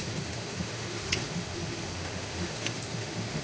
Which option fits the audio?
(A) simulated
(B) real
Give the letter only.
A